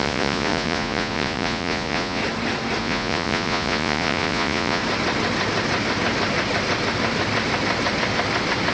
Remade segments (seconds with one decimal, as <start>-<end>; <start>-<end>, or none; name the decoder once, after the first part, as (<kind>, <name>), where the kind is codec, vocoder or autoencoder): 0.0-2.2 (vocoder, Vocos); 2.8-4.8